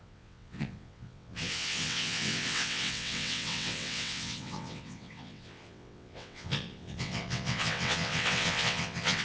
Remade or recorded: remade